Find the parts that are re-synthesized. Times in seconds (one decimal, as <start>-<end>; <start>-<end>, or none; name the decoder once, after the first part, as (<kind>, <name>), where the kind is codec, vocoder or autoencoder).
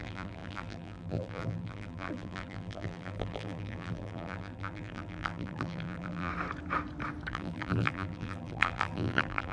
0.0-6.3 (vocoder, BigVGAN v2); 7.3-9.5